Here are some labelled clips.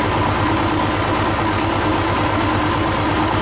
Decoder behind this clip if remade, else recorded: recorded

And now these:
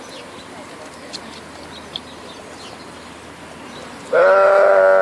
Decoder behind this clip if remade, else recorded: recorded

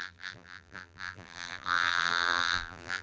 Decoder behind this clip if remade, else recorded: remade, vocoder, BigVGAN v2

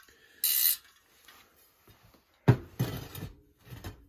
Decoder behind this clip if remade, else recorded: recorded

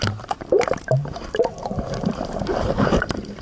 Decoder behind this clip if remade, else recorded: remade, vocoder, BigVGAN v2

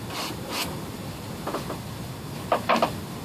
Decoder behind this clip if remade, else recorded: recorded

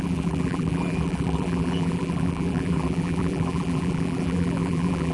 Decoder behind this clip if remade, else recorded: remade, vocoder, BigVGAN v2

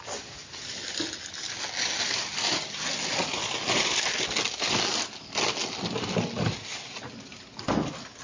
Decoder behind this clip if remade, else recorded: recorded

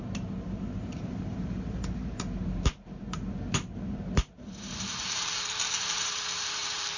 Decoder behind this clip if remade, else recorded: remade, vocoder, BigVGAN v2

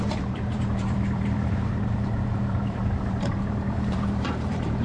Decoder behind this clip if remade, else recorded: remade, vocoder, BigVGAN v2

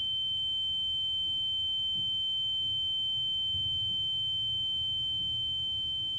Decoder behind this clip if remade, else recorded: recorded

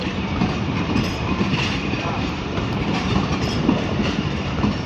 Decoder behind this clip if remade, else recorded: remade, vocoder, BigVGAN v2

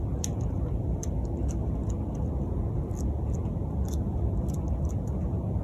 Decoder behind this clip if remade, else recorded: recorded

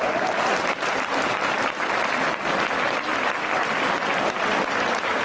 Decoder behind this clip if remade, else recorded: recorded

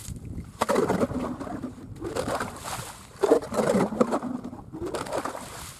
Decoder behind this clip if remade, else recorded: recorded